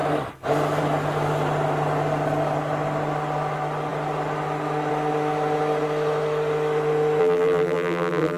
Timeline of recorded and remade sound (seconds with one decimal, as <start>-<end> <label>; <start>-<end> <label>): 0.0-7.2 recorded; 7.2-8.4 remade